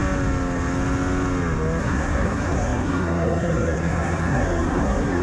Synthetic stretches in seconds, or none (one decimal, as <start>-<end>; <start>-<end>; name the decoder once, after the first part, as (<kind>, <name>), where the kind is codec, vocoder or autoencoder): 1.8-5.2 (codec, SNAC)